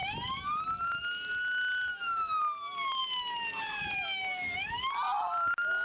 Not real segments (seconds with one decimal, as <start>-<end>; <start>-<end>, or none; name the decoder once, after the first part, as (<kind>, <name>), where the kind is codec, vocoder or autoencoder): 1.9-2.4 (autoencoder, DAC-VAE)